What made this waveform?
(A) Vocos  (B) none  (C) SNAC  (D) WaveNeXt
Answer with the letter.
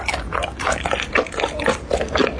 B